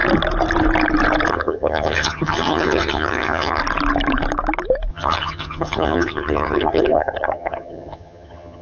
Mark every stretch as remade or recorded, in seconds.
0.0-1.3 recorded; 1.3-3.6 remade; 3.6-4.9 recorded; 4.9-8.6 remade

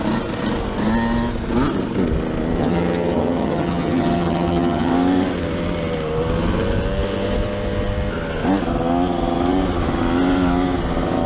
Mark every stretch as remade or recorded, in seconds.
0.0-2.6 recorded; 2.6-4.9 remade; 4.9-11.3 recorded

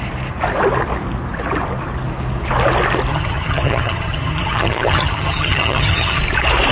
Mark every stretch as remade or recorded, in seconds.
0.0-3.1 recorded; 3.1-6.2 remade; 6.2-6.7 recorded

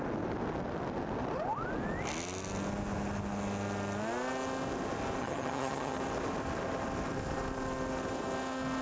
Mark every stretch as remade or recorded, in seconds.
0.0-5.2 recorded; 5.2-6.0 remade; 6.0-8.8 recorded

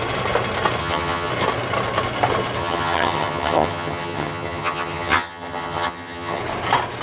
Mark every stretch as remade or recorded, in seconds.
0.0-0.8 recorded; 0.8-1.3 remade; 1.3-2.6 recorded; 2.6-6.4 remade; 6.4-7.0 recorded

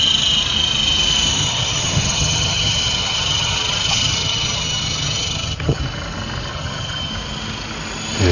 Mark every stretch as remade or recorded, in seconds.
0.0-1.4 recorded; 1.4-5.8 remade; 5.8-6.5 recorded; 6.5-7.1 remade; 7.1-8.3 recorded

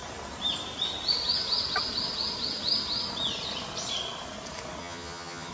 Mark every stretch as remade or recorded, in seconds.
0.0-4.8 recorded; 4.8-5.5 remade